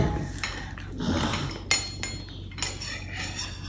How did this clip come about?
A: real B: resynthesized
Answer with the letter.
A